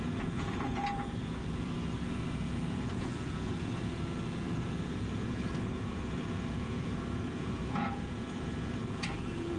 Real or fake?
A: fake